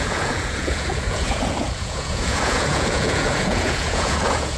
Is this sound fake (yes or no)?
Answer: yes